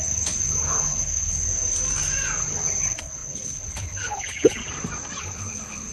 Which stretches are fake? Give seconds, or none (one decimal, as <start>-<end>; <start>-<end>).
0.0-1.5; 2.4-4.6; 5.2-5.9